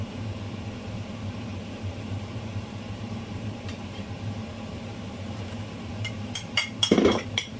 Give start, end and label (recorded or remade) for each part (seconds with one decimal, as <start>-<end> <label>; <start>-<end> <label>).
0.0-7.6 remade